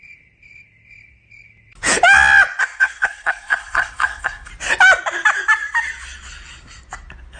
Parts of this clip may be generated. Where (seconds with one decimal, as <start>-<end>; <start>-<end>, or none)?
2.6-4.5